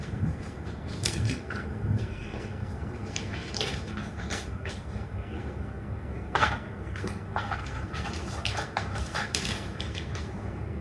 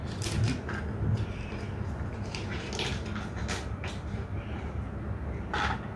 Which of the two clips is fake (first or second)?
first